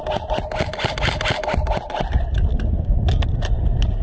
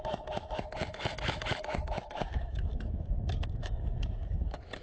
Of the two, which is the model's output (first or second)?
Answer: second